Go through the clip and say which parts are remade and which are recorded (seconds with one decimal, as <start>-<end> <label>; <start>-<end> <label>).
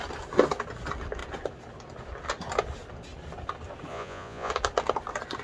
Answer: 0.0-3.9 recorded; 3.9-4.5 remade; 4.5-5.4 recorded